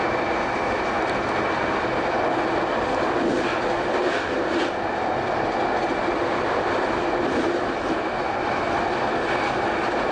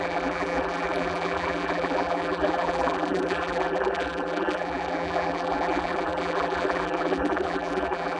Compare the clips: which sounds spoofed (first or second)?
second